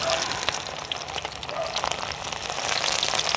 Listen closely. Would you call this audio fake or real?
real